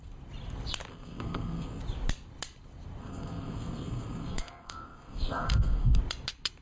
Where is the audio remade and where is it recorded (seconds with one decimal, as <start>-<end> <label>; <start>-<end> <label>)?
0.0-0.9 recorded; 0.9-1.8 remade; 1.8-3.0 recorded; 3.0-6.0 remade; 6.0-6.6 recorded